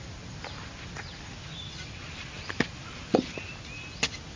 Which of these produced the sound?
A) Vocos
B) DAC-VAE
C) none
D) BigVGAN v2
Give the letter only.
C